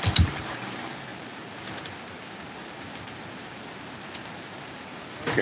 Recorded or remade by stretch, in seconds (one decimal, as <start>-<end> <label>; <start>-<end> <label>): 0.0-5.4 remade